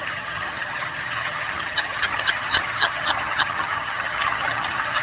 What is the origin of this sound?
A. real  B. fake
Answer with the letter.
B